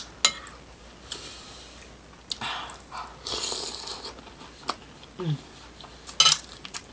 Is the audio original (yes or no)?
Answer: yes